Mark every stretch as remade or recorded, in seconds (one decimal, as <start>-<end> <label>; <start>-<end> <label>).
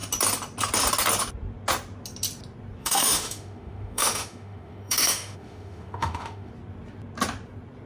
0.0-2.8 recorded; 2.8-6.5 remade; 6.5-7.9 recorded